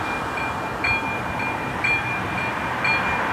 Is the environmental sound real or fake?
real